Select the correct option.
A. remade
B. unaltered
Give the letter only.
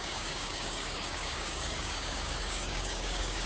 A